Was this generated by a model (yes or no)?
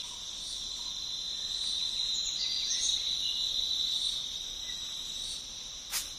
no